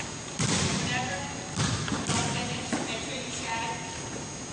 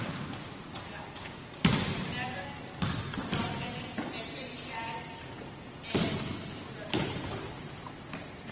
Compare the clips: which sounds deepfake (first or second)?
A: first